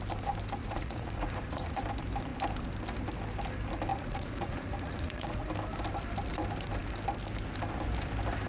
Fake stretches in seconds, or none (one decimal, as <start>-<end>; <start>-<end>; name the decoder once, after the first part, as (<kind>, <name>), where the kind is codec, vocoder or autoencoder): 0.6-1.8 (vocoder, Vocos); 3.9-5.4